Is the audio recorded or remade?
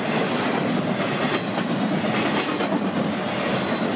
recorded